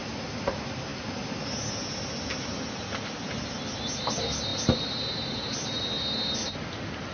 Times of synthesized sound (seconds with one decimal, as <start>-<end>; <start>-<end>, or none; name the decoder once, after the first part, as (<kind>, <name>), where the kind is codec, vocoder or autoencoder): none